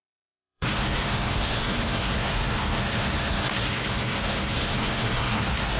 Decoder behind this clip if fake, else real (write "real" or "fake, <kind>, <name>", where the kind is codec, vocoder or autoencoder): fake, codec, SNAC